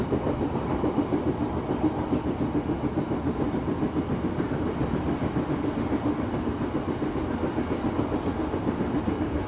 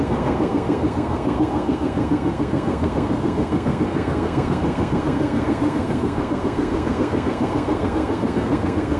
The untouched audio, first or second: first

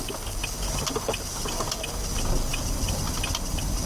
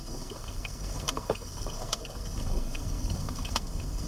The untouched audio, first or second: first